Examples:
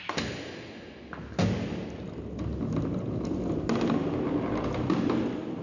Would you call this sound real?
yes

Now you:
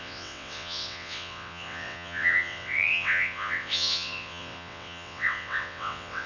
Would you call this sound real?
no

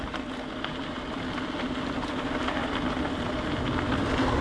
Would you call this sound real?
yes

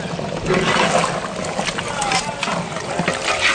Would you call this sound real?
yes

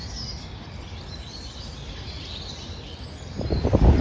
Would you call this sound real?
yes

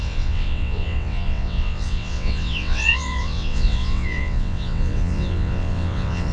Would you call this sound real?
no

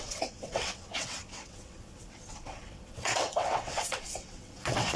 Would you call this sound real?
no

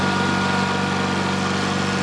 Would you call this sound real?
yes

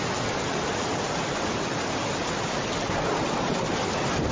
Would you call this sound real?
yes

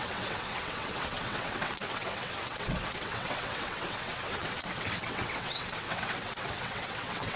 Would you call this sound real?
no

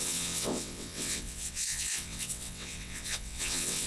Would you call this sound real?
no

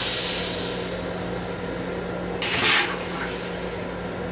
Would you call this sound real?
yes